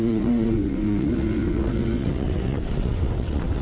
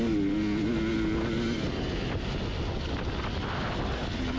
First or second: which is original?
second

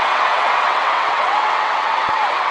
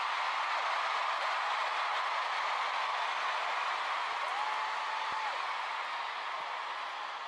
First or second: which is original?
second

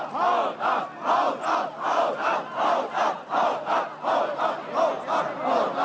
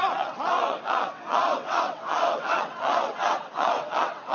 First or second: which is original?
first